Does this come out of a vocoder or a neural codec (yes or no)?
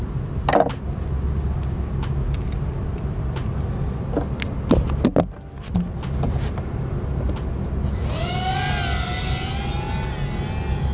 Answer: no